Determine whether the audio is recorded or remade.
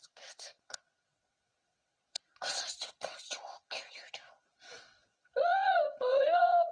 remade